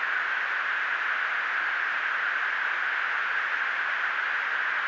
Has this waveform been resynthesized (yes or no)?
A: no